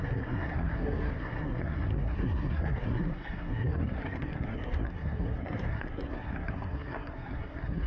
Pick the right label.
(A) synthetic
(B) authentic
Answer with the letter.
A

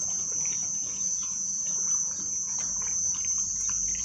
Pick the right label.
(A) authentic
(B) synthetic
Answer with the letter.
B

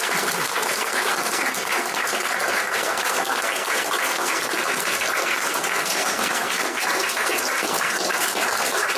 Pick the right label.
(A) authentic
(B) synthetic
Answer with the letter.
B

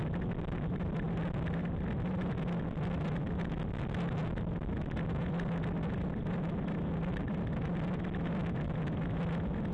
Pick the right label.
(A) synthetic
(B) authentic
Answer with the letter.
B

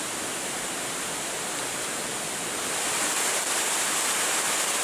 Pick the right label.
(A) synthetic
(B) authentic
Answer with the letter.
A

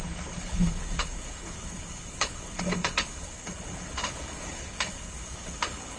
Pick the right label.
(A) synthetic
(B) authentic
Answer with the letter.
A